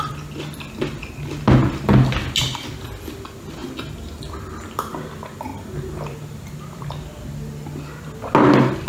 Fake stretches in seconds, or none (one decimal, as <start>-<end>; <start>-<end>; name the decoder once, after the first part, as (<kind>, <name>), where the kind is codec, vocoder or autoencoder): 5.5-6.5 (vocoder, BigVGAN v2)